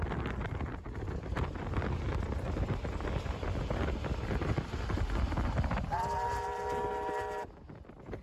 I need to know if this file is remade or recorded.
recorded